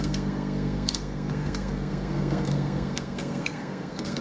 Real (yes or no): no